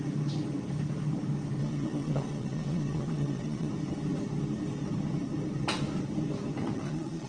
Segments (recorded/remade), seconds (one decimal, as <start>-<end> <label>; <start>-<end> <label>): 0.0-1.6 recorded; 1.6-3.7 remade; 3.7-6.6 recorded; 6.6-7.3 remade